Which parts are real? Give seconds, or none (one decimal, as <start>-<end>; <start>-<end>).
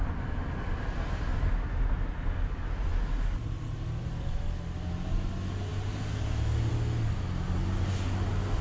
0.0-8.6